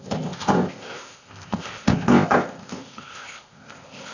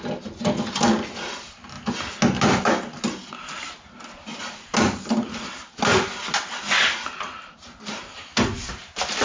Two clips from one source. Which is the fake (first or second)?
first